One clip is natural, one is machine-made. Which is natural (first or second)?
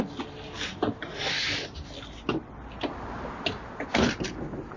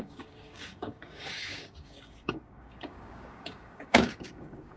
first